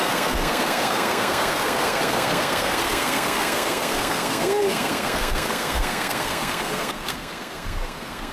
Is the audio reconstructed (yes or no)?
yes